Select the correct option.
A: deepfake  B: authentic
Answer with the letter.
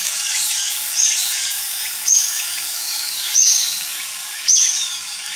A